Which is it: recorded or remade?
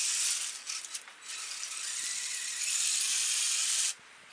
recorded